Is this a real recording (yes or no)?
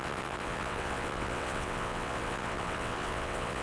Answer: no